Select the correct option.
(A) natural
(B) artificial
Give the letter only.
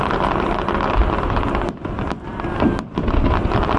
A